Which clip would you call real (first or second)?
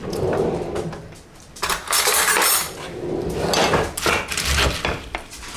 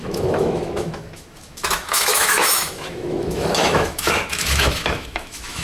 first